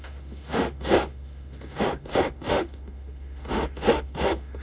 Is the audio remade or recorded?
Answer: remade